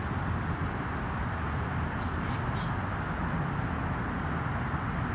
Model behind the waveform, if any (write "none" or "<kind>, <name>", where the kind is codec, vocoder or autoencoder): none